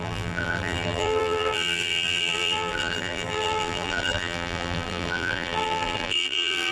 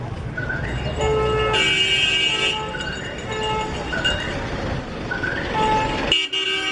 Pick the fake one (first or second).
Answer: first